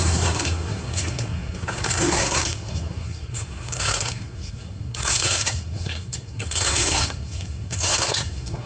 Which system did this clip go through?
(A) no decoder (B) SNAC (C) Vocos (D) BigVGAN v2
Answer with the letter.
B